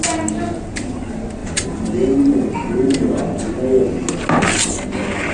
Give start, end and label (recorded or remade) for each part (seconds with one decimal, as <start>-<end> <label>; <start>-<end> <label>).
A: 0.0-1.4 recorded; 1.4-3.2 remade; 3.2-5.3 recorded

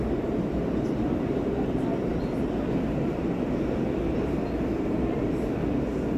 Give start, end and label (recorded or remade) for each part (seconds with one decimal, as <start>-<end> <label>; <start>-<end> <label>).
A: 0.0-6.2 recorded

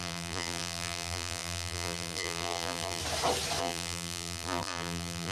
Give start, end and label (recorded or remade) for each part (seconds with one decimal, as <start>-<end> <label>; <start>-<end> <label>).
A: 0.0-3.0 remade; 3.0-3.6 recorded; 3.6-5.3 remade

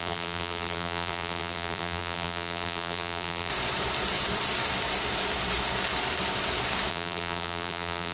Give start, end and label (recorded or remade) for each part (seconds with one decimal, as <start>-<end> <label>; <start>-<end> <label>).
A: 0.0-3.5 remade; 3.5-6.9 recorded; 6.9-8.1 remade

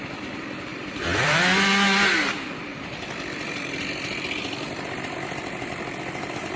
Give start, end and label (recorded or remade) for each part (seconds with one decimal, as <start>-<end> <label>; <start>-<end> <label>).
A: 0.0-0.7 recorded; 0.7-1.4 remade; 1.4-2.7 recorded; 2.7-6.0 remade; 6.0-6.6 recorded

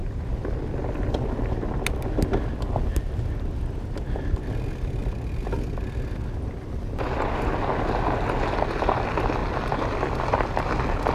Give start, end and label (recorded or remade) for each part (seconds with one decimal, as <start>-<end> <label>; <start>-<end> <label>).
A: 0.0-11.1 recorded

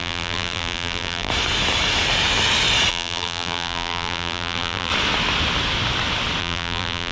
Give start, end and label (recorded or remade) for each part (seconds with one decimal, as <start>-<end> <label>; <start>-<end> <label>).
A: 0.0-1.3 remade; 1.3-2.9 recorded; 2.9-4.9 remade; 4.9-6.4 recorded; 6.4-7.1 remade